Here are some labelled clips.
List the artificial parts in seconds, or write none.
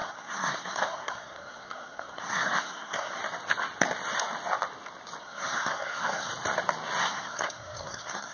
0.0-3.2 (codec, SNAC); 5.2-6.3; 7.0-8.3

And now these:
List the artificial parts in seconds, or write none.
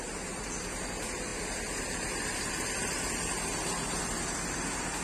none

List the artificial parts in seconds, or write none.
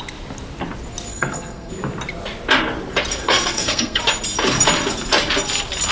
1.1-1.7 (codec, SNAC); 3.2-4.0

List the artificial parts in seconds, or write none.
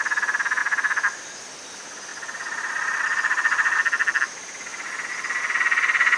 none